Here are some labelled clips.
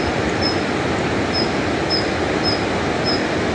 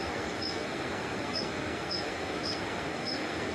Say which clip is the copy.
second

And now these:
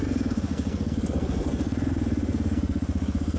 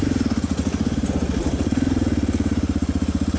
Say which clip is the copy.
first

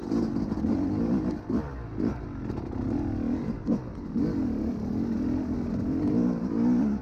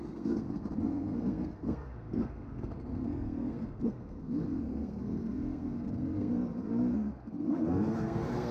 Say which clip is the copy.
second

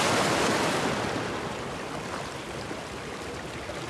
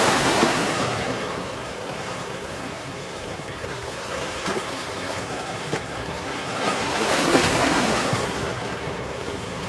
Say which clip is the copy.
second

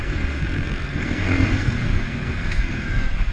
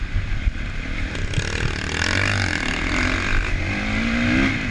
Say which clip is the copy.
first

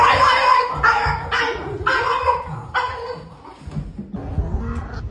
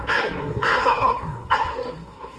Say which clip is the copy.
second